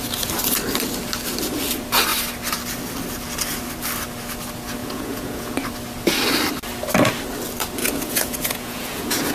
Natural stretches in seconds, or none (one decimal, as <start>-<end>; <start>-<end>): 0.0-4.8; 5.5-7.8